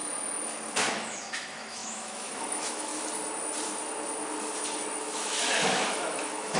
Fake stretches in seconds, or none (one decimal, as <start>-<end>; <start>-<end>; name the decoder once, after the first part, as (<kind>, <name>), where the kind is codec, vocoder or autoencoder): 0.9-2.9 (autoencoder, DAC-VAE); 5.0-6.6